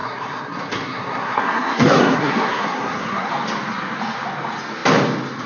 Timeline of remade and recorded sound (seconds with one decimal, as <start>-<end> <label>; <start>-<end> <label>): 0.0-3.3 remade; 3.3-5.5 recorded